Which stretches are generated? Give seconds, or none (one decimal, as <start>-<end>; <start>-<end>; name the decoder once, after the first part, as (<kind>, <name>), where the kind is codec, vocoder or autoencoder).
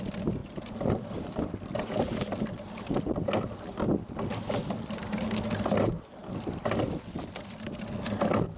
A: 0.4-3.5 (vocoder, BigVGAN v2)